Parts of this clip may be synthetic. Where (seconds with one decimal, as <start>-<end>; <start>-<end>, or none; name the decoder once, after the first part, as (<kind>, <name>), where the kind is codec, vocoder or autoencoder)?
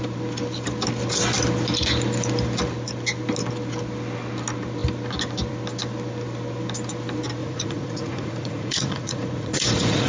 7.4-10.1 (vocoder, Vocos)